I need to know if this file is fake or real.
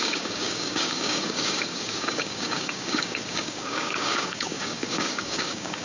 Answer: fake